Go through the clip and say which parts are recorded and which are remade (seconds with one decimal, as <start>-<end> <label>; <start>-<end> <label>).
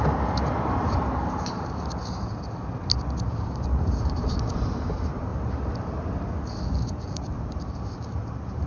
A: 0.0-2.0 remade; 2.0-3.3 recorded; 3.3-5.3 remade; 5.3-6.8 recorded; 6.8-8.7 remade